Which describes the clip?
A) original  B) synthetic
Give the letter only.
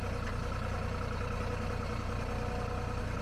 A